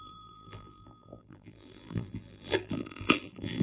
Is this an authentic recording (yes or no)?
no